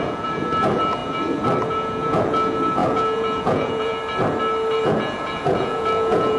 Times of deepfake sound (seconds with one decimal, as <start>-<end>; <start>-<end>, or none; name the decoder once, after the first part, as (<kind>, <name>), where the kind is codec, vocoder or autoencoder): 0.0-1.0 (vocoder, Vocos); 1.7-4.0; 4.8-6.4